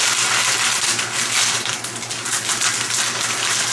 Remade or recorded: recorded